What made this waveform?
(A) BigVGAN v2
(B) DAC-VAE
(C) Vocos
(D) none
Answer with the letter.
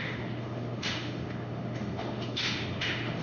B